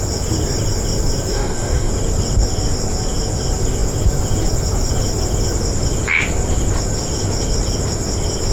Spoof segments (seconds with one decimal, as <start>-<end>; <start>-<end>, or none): 1.3-1.9